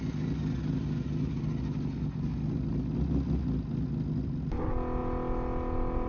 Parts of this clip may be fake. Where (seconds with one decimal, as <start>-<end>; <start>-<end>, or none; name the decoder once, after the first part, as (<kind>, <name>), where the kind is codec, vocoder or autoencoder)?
none